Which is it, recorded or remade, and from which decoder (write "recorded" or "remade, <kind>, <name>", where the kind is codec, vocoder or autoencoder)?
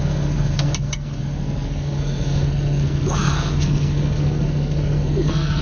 remade, codec, SNAC